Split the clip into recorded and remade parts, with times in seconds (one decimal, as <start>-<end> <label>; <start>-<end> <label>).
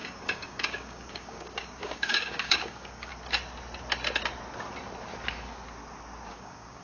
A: 0.0-3.1 remade; 3.1-6.3 recorded; 6.3-6.8 remade